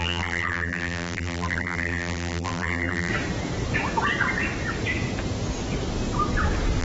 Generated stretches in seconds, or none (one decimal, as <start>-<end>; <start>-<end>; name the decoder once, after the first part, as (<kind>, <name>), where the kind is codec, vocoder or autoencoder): 0.0-3.1 (vocoder, BigVGAN v2)